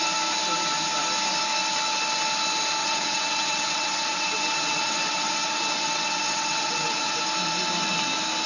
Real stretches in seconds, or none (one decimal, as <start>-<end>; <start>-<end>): 0.0-2.8; 7.2-8.5